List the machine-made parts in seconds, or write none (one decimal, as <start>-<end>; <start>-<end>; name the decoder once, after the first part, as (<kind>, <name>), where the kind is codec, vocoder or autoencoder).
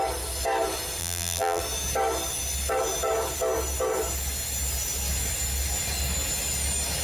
1.0-1.6 (vocoder, BigVGAN v2)